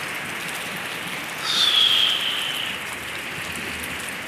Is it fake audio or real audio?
real